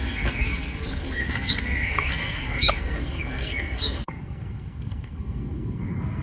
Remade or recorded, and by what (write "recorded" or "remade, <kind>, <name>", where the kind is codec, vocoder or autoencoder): remade, codec, SNAC